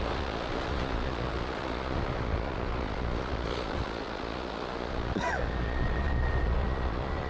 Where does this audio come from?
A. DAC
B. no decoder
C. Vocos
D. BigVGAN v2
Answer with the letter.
C